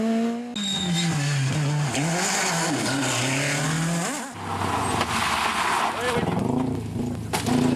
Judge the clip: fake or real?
real